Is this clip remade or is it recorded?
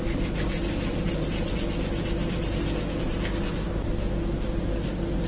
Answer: recorded